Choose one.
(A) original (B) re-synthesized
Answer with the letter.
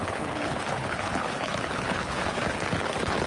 B